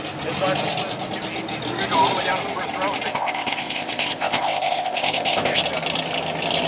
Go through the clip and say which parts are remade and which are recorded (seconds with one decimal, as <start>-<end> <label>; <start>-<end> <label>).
0.0-3.1 recorded; 3.1-5.6 remade; 5.6-6.7 recorded